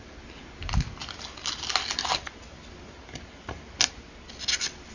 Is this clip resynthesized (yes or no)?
no